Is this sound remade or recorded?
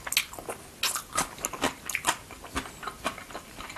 recorded